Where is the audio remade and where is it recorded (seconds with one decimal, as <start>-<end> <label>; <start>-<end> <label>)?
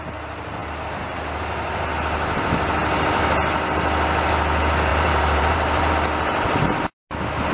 0.0-4.9 recorded; 4.9-5.9 remade; 5.9-7.5 recorded